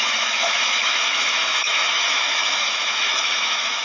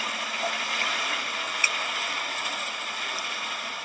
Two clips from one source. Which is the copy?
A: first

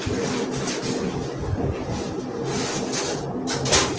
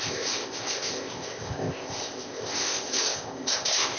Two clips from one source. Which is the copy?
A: second